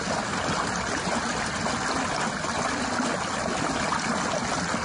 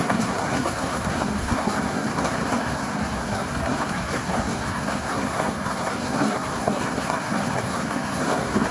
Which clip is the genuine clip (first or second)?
first